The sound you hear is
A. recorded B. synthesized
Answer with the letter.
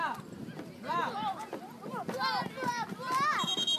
A